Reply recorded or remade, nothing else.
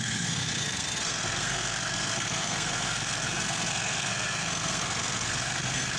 remade